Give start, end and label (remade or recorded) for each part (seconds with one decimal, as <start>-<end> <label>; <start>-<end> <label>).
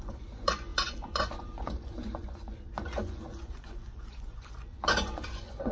0.0-5.7 remade